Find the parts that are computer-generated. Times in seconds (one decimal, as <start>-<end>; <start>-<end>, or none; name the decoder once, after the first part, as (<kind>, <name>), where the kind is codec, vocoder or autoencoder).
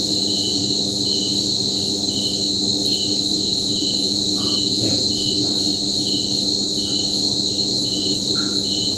0.0-0.6 (vocoder, Vocos); 3.4-5.1; 7.7-9.0